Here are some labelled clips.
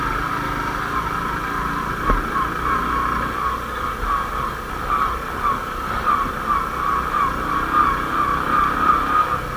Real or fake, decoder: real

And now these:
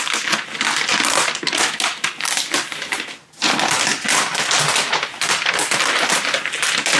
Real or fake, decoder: real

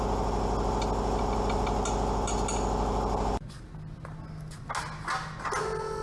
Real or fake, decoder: real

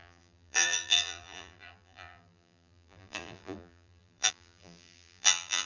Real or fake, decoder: fake, vocoder, BigVGAN v2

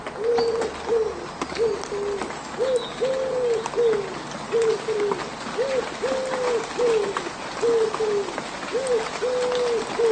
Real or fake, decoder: real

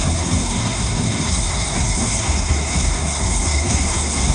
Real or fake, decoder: fake, codec, SNAC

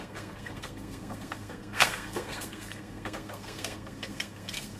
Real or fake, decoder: fake, codec, SNAC